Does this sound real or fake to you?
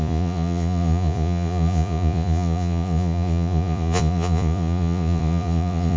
fake